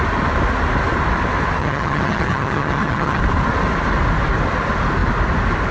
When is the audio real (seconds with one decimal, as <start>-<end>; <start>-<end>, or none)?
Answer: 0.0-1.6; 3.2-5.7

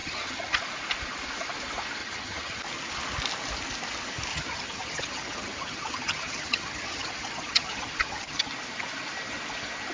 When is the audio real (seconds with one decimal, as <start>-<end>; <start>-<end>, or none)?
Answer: 0.6-2.0; 2.6-4.3; 8.5-9.9

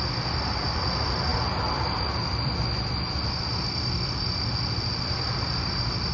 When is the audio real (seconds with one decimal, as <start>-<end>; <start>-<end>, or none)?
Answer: 0.0-6.1

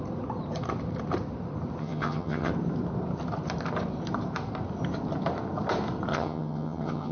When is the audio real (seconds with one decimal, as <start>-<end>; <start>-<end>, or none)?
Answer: 0.0-1.8; 2.5-6.1

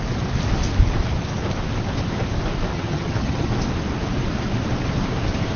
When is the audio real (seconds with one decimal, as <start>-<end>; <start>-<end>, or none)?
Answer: 0.0-2.7; 3.5-5.6